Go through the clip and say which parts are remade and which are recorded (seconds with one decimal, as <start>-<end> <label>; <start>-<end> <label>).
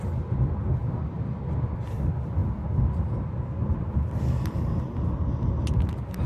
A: 0.0-6.3 recorded